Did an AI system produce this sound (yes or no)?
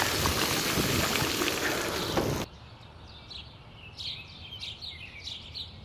no